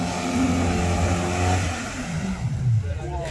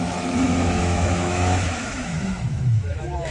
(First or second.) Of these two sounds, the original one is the first